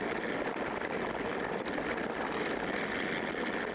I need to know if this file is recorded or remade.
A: remade